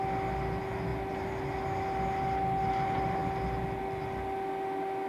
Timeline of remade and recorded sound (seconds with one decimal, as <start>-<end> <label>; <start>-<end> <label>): 0.0-5.1 recorded